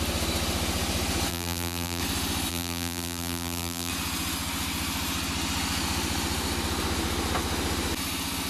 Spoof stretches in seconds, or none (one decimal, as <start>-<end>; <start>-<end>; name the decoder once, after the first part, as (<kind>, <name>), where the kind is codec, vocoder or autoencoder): 1.3-2.0 (vocoder, BigVGAN v2); 2.5-3.9